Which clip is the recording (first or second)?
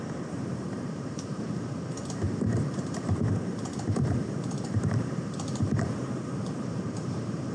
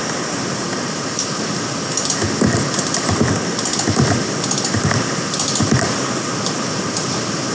second